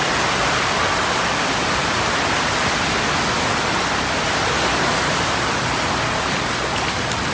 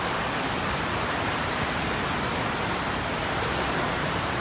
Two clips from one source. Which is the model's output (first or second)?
second